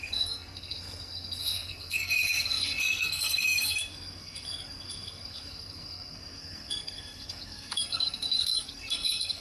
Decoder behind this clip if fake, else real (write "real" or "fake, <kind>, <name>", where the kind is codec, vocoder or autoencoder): fake, codec, SNAC